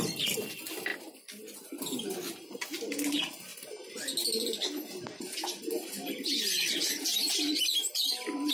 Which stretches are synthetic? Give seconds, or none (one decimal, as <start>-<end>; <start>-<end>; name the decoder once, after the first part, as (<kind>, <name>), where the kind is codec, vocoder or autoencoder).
none